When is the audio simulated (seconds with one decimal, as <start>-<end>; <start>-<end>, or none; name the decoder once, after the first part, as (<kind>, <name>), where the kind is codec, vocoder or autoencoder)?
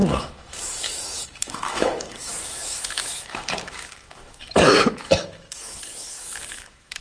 0.0-7.0 (autoencoder, DAC-VAE)